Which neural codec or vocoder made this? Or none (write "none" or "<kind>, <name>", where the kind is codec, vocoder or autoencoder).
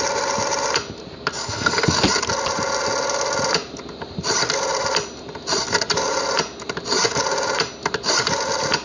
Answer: none